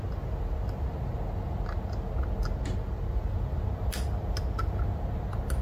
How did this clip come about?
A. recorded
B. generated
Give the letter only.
A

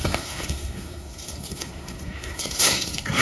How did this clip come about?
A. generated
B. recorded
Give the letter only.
A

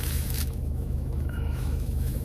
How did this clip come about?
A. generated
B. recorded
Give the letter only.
A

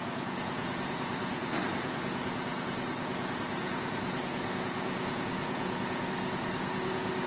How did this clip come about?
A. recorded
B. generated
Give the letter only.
B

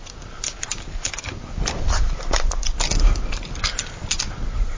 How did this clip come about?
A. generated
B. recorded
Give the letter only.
B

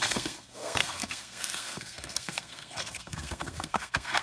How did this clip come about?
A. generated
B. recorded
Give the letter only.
A